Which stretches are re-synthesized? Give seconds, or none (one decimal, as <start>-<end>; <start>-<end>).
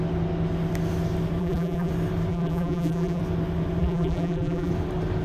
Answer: 1.4-1.9; 2.3-3.2; 3.8-4.7